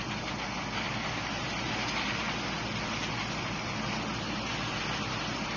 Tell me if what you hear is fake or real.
real